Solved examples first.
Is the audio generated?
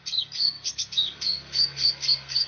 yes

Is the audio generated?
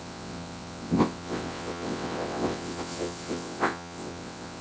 yes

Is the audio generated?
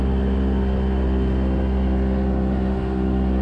yes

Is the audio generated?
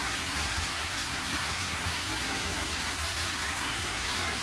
yes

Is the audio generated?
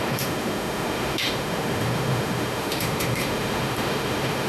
yes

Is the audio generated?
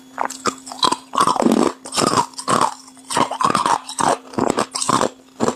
no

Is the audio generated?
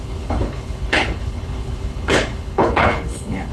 yes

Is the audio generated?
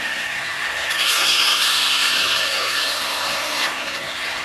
yes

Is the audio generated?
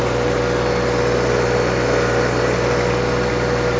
no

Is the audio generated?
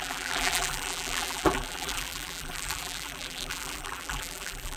yes